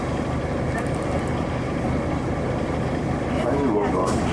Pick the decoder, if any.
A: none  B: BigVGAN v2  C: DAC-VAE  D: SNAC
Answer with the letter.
A